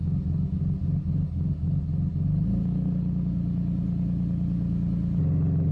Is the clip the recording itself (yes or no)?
yes